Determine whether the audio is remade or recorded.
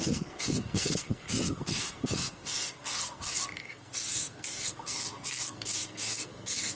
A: remade